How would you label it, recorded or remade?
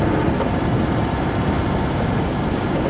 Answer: remade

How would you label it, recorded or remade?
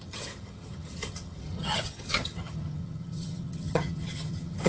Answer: remade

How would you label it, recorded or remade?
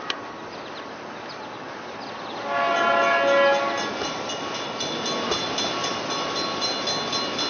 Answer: recorded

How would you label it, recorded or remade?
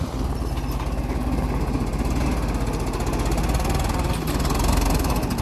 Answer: recorded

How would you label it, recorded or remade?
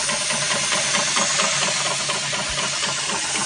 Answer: recorded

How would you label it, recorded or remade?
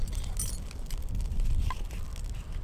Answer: recorded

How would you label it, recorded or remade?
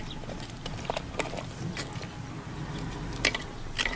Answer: recorded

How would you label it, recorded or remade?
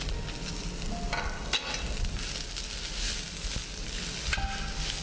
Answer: recorded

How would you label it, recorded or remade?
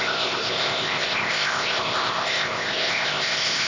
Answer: remade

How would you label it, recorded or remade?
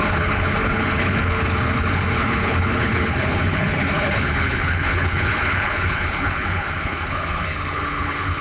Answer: remade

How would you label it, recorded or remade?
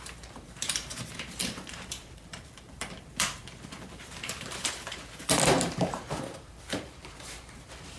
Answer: remade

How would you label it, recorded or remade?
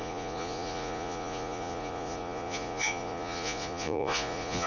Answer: remade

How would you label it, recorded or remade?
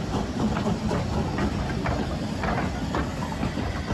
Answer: recorded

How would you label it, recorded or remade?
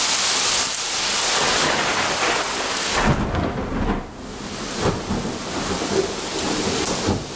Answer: recorded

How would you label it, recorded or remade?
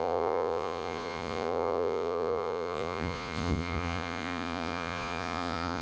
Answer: remade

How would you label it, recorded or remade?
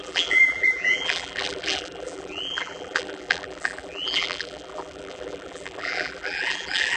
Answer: remade